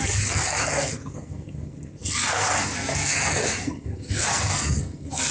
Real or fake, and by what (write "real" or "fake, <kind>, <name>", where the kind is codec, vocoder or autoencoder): fake, codec, SNAC